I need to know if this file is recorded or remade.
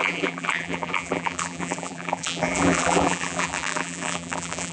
remade